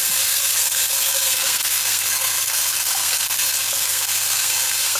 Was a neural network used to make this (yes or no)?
yes